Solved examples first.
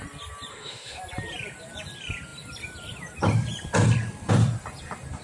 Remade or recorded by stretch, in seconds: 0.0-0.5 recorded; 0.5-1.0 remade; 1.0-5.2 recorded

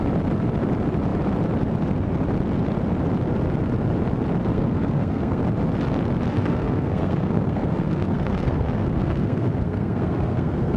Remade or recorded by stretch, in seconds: 0.0-4.5 recorded; 4.5-5.4 remade; 5.4-6.3 recorded; 6.3-10.8 remade

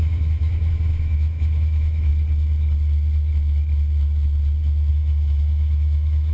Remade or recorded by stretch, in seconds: 0.0-2.1 remade; 2.1-4.9 recorded; 4.9-6.3 remade